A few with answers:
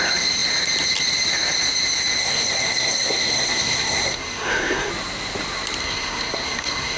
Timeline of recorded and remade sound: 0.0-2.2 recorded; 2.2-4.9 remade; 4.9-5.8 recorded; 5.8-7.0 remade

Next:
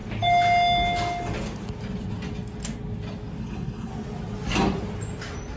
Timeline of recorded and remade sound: 0.0-3.4 recorded; 3.4-3.9 remade; 3.9-5.6 recorded

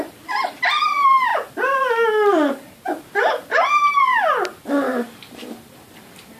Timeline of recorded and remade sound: 0.0-1.3 remade; 1.3-3.3 recorded; 3.3-4.1 remade; 4.1-4.6 recorded; 4.6-6.4 remade

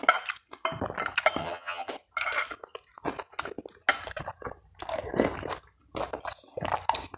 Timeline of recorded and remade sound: 0.0-1.4 recorded; 1.4-1.9 remade; 1.9-7.2 recorded